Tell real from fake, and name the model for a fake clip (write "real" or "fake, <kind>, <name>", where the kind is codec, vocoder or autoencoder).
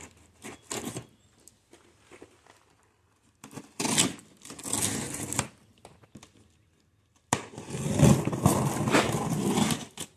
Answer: real